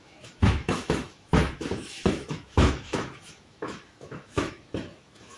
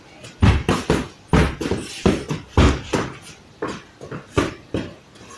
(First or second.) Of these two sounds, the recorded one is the second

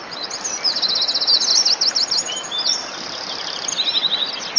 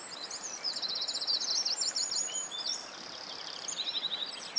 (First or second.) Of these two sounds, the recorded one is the first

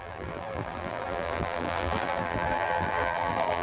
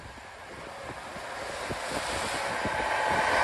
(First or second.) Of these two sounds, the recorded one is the second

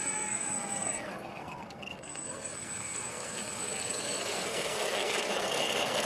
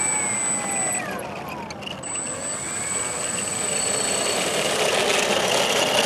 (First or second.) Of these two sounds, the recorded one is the second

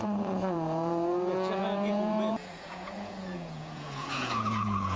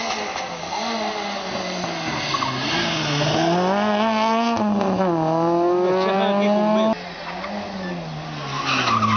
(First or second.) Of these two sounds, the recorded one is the second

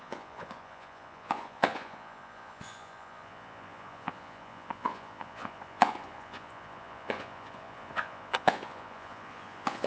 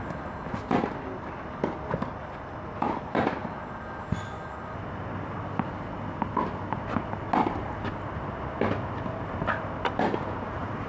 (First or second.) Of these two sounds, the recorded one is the second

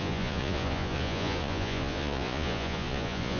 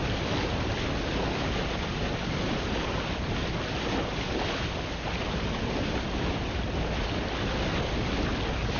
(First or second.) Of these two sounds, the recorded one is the second